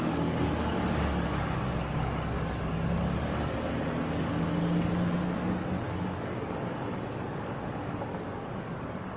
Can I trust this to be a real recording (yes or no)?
no